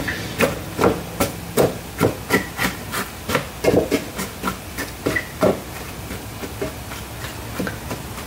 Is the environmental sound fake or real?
real